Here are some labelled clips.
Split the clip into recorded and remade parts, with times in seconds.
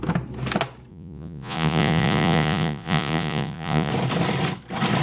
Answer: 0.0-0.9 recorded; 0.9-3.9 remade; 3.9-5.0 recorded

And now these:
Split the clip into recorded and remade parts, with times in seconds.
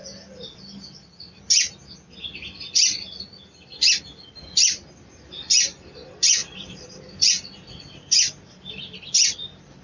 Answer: 0.0-6.4 recorded; 6.4-7.3 remade; 7.3-9.8 recorded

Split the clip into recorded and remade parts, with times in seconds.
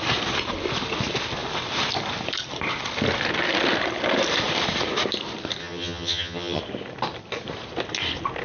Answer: 0.0-5.6 recorded; 5.6-6.6 remade; 6.6-8.4 recorded